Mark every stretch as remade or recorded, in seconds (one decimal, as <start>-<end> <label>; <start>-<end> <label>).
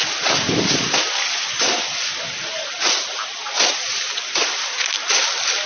0.0-5.7 recorded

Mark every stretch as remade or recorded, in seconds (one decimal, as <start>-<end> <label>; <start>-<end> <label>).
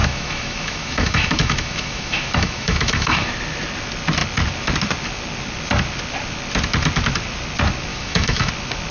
0.0-3.3 remade; 3.3-7.9 recorded; 7.9-8.5 remade; 8.5-8.9 recorded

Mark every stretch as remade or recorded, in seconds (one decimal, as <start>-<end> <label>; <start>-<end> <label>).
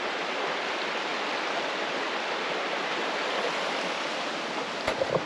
0.0-5.3 recorded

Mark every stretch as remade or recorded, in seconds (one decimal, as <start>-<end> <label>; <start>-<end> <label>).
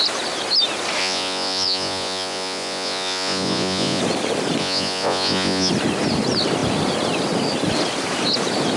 0.0-1.0 recorded; 1.0-4.0 remade; 4.0-4.6 recorded; 4.6-5.7 remade; 5.7-8.8 recorded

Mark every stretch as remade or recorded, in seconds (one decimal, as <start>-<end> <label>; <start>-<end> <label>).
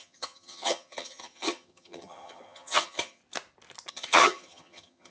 0.0-3.2 remade; 3.2-3.9 recorded; 3.9-5.1 remade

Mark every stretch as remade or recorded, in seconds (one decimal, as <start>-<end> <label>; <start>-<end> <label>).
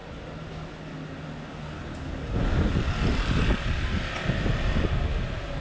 0.0-5.6 recorded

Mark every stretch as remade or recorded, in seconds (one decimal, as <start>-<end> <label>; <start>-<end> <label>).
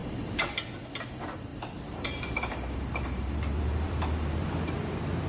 0.0-0.5 remade; 0.5-1.5 recorded; 1.5-4.7 remade; 4.7-5.3 recorded